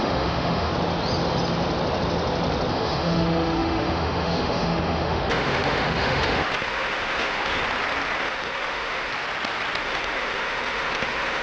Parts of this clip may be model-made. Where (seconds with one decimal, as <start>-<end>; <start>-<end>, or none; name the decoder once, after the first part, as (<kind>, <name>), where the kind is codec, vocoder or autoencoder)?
0.0-0.7 (autoencoder, DAC-VAE); 2.7-7.6; 8.2-9.1; 9.8-11.4